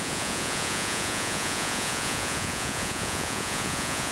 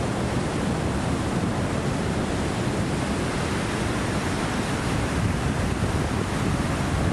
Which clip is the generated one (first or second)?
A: first